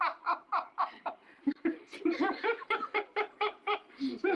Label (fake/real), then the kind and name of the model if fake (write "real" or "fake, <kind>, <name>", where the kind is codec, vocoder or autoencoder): fake, vocoder, BigVGAN v2